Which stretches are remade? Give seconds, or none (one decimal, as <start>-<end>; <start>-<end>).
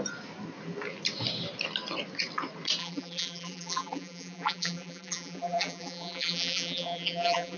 2.8-7.6